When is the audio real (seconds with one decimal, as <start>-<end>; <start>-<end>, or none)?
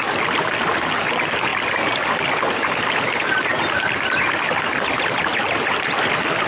0.0-6.5